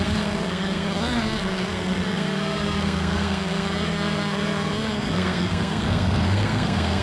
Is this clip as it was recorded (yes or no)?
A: no